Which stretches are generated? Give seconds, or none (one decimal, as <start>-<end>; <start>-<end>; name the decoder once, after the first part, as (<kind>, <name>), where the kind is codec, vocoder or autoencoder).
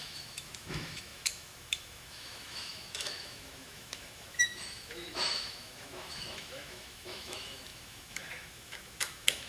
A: 0.0-9.5 (autoencoder, DAC-VAE)